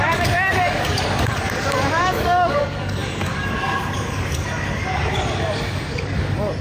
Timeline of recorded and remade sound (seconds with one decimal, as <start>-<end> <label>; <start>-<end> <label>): 0.0-6.6 remade